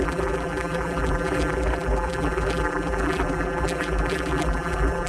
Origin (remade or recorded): remade